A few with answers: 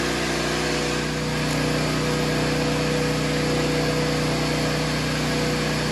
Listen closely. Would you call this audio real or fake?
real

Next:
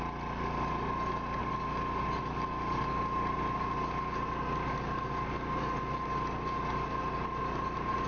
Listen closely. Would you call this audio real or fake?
real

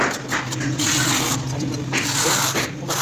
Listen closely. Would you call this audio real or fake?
real